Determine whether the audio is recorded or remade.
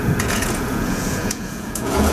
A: remade